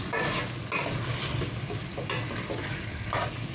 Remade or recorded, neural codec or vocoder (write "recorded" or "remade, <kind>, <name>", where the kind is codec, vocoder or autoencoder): recorded